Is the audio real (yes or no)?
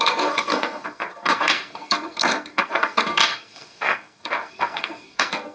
no